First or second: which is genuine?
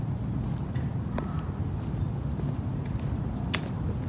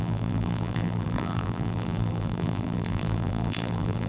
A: first